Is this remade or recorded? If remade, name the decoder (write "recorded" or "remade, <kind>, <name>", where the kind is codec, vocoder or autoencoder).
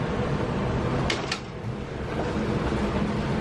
recorded